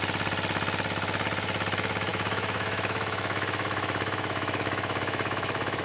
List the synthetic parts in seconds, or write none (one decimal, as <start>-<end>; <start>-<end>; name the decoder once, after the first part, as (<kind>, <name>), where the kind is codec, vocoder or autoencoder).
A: 2.1-5.8 (autoencoder, DAC-VAE)